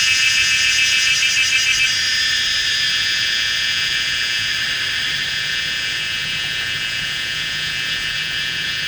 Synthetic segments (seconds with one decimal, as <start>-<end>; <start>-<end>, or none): 0.0-1.1; 2.9-4.5; 5.3-8.9